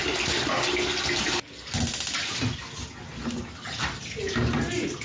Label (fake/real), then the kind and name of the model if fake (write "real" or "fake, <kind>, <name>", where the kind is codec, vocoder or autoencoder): real